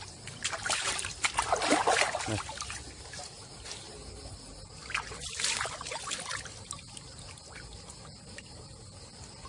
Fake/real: real